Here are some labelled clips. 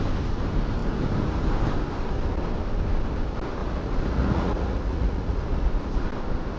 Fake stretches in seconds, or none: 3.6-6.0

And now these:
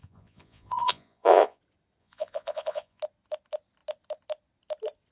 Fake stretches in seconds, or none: 0.0-1.6; 2.0-3.0

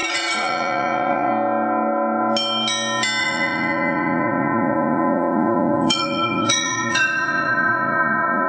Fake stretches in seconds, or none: 0.0-1.3; 3.2-8.5

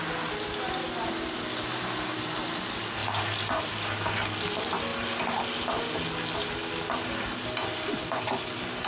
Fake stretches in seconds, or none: none

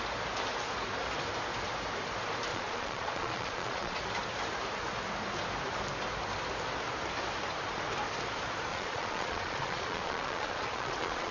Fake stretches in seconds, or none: 2.5-4.0; 8.7-11.3